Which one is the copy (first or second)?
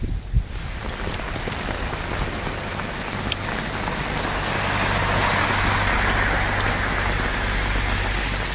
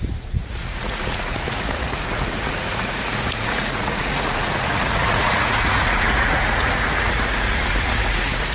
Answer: second